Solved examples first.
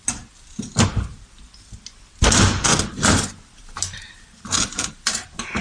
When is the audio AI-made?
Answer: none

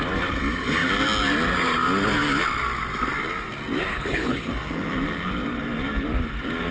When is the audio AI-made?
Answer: 3.9-4.5

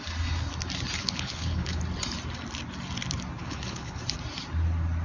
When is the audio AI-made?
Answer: 1.0-1.8; 3.4-4.0